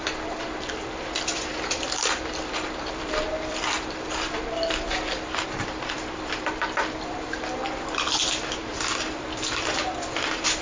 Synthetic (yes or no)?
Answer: yes